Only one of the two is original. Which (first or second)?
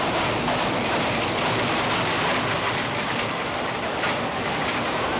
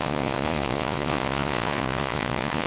first